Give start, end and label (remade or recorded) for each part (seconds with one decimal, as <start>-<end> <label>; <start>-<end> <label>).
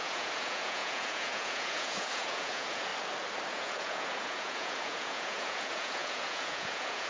0.0-2.9 remade; 2.9-3.5 recorded; 3.5-7.1 remade